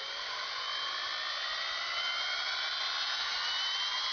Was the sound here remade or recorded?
recorded